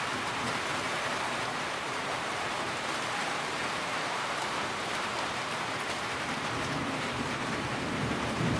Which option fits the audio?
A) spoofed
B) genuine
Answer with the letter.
A